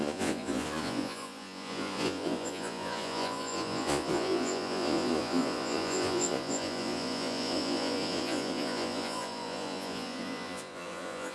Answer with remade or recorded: remade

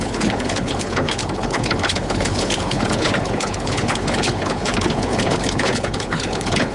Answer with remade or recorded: remade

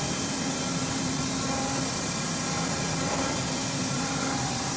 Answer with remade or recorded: remade